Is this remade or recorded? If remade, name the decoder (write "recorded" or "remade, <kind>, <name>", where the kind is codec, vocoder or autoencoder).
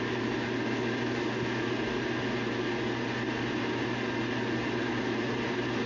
recorded